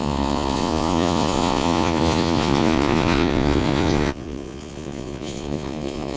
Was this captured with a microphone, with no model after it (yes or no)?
no